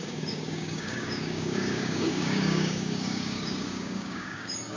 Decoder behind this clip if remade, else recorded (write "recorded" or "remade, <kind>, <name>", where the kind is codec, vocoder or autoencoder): remade, codec, DAC